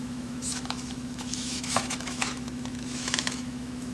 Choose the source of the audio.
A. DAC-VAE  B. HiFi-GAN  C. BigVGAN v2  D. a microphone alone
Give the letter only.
A